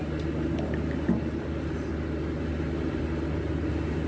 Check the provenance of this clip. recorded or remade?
recorded